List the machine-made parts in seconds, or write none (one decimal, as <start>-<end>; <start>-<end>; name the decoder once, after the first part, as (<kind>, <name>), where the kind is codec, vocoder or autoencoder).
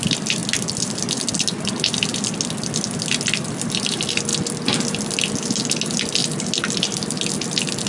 none